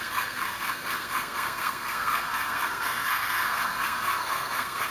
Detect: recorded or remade remade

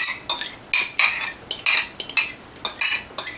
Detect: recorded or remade recorded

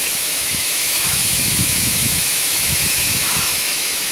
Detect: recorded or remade remade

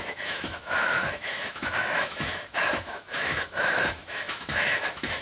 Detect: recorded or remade remade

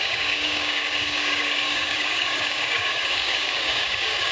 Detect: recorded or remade remade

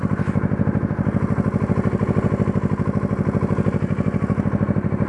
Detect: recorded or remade recorded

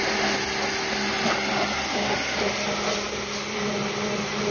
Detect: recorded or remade recorded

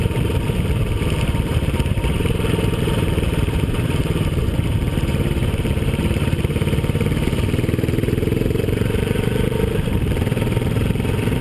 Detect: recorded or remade remade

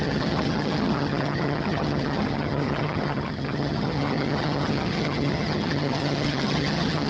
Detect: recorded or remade remade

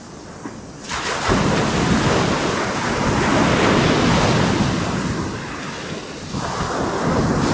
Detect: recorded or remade recorded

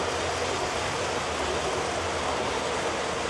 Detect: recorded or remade recorded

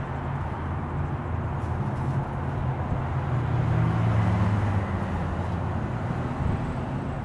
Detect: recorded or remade recorded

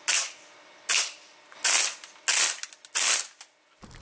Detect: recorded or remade recorded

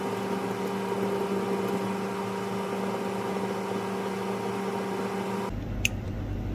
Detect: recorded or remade recorded